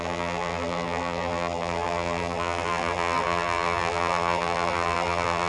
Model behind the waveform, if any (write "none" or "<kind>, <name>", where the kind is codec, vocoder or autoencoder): vocoder, BigVGAN v2